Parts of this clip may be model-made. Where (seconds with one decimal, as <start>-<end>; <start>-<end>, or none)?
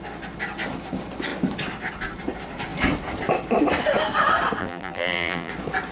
4.6-5.5